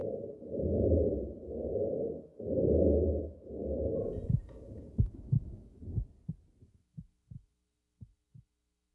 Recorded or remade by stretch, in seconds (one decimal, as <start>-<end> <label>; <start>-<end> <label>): 0.0-1.7 recorded; 1.7-3.6 remade; 3.6-4.5 recorded; 4.5-5.8 remade; 5.8-6.7 recorded; 6.7-8.9 remade